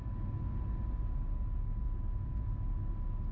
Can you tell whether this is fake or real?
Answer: real